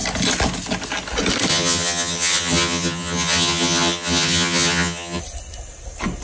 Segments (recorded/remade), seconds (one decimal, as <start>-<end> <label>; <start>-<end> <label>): 0.0-1.5 recorded; 1.5-5.2 remade; 5.2-6.2 recorded